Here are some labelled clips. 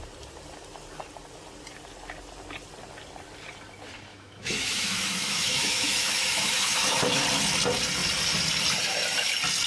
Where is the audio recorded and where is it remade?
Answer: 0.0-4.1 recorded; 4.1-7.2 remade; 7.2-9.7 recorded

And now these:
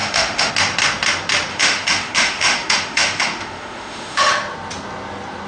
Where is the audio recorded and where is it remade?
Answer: 0.0-0.5 remade; 0.5-1.5 recorded; 1.5-4.3 remade; 4.3-5.5 recorded

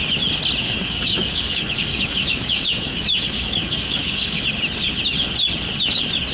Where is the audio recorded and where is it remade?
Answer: 0.0-0.6 recorded; 0.6-4.4 remade; 4.4-6.3 recorded

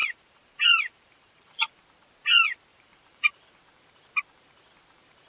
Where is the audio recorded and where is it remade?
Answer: 0.0-1.8 remade; 1.8-2.7 recorded; 2.7-3.5 remade; 3.5-5.3 recorded

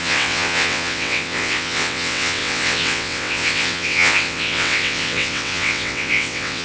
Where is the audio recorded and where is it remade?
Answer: 0.0-6.6 remade